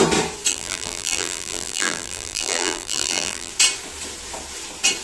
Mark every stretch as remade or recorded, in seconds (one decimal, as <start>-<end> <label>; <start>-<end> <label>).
0.0-0.5 recorded; 0.5-3.5 remade; 3.5-5.0 recorded